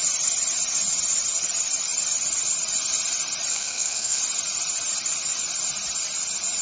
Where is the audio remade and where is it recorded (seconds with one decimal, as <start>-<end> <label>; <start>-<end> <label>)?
0.0-3.5 recorded; 3.5-4.2 remade; 4.2-6.6 recorded